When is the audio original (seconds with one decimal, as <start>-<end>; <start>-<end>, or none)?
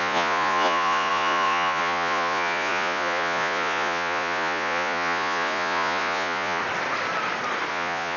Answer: 6.6-7.7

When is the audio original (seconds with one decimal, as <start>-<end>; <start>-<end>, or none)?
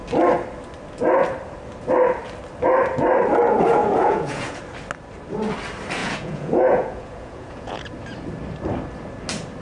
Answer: 0.0-3.8; 4.6-6.0; 7.9-9.6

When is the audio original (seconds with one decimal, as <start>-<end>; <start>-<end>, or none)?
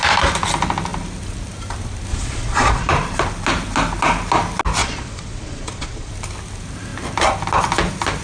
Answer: 0.0-2.1; 2.9-4.8; 6.1-8.2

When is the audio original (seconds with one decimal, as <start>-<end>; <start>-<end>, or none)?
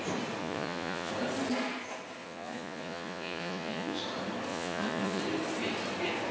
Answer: 0.0-0.4; 1.1-2.2; 4.0-4.5; 5.2-6.3